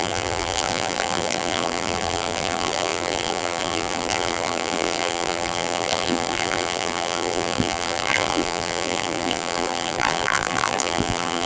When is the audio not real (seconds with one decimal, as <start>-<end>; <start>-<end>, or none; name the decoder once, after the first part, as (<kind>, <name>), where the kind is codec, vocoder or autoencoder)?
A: 0.0-11.5 (vocoder, BigVGAN v2)